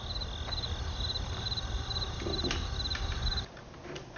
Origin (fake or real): real